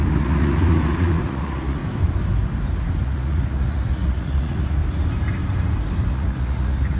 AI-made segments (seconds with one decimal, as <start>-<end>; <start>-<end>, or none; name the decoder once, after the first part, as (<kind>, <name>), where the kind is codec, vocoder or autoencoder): 0.0-1.8 (vocoder, Vocos); 3.0-4.8; 6.1-7.0